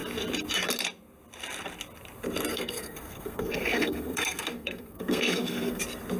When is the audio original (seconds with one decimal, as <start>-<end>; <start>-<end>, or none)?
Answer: 0.0-2.5; 5.8-6.2